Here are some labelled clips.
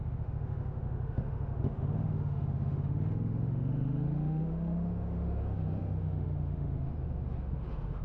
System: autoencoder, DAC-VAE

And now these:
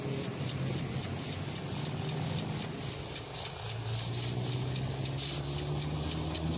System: none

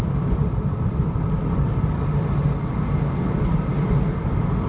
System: none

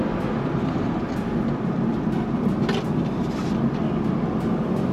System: none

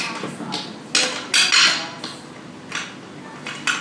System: none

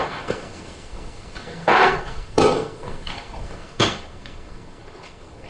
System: codec, SNAC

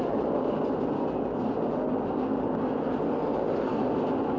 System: none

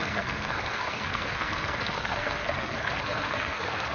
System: codec, SNAC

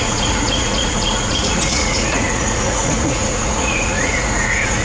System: vocoder, Vocos